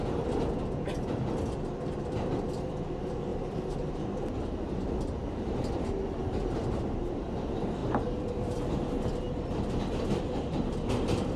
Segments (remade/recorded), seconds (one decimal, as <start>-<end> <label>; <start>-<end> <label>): 0.0-3.3 recorded; 3.3-3.9 remade; 3.9-6.2 recorded; 6.2-7.1 remade; 7.1-7.8 recorded; 7.8-8.3 remade; 8.3-11.4 recorded